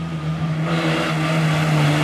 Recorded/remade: recorded